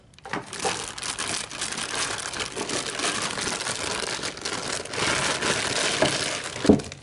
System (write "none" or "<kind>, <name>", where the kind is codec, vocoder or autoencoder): none